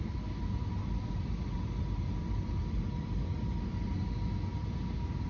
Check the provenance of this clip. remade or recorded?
recorded